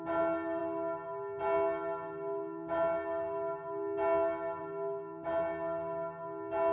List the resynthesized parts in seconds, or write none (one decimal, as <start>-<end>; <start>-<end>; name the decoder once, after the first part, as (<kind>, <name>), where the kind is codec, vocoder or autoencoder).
none